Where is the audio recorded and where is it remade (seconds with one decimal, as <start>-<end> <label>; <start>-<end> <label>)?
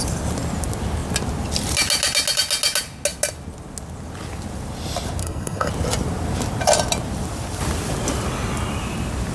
0.0-5.2 recorded; 5.2-5.7 remade; 5.7-9.3 recorded